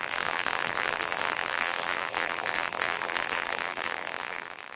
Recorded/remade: remade